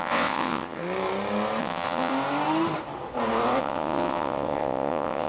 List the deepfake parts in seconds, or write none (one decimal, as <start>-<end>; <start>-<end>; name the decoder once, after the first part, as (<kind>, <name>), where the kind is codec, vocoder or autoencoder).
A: 0.0-0.8 (vocoder, WaveNeXt); 1.6-2.1; 3.6-5.3